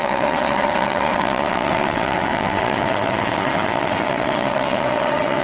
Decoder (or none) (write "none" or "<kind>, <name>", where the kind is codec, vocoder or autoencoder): vocoder, WaveNeXt